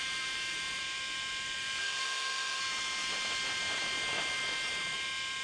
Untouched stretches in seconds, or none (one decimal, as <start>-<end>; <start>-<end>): 0.0-1.8; 2.6-5.4